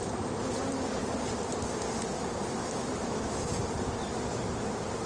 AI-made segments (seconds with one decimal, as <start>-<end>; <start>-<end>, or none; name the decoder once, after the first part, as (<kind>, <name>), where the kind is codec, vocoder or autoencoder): 2.6-3.5 (autoencoder, DAC-VAE)